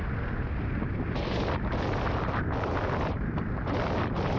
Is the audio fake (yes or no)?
no